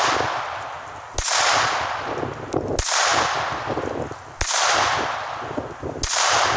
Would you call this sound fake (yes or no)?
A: no